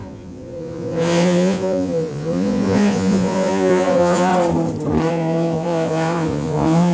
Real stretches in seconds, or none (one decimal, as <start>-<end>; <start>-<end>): 4.3-5.1